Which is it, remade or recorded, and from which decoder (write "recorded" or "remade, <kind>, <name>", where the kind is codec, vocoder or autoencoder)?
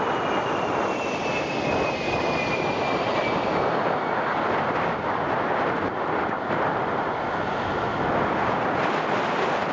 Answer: recorded